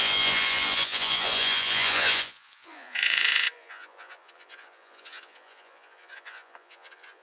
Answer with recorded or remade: remade